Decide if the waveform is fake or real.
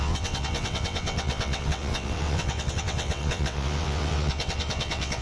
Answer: fake